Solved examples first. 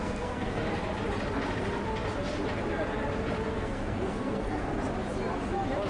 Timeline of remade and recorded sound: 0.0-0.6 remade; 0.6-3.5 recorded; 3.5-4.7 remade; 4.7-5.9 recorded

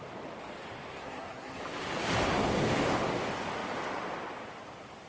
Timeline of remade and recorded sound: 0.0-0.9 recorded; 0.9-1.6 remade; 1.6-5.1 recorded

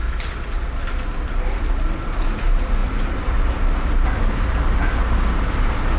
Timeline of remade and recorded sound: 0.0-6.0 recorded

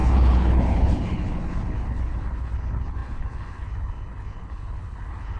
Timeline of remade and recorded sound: 0.0-5.4 remade

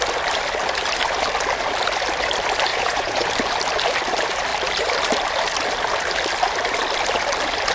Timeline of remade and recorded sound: 0.0-2.7 recorded; 2.7-3.3 remade; 3.3-7.7 recorded